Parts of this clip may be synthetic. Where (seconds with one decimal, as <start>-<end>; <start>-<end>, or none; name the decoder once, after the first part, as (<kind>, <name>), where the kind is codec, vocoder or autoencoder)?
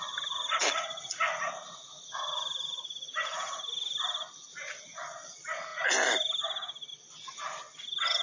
none